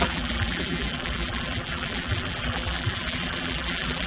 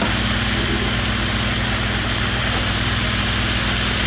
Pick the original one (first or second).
second